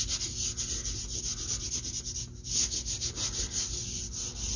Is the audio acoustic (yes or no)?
yes